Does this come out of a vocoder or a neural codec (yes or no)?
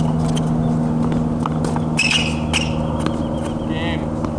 no